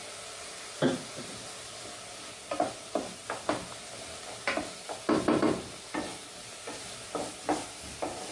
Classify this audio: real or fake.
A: real